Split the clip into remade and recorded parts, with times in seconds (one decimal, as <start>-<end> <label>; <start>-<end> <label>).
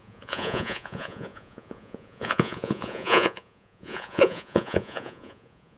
0.0-5.8 remade